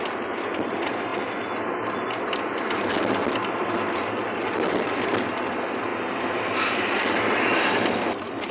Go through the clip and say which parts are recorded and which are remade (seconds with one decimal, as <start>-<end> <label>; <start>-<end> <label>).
0.0-3.2 recorded; 3.2-5.5 remade; 5.5-8.5 recorded